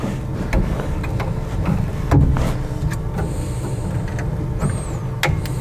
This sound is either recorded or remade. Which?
recorded